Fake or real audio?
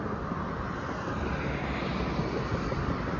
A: real